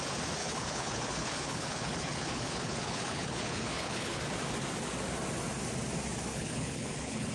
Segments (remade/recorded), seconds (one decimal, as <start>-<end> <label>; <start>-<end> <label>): 0.0-0.4 recorded; 0.4-4.2 remade; 4.2-6.3 recorded; 6.3-7.3 remade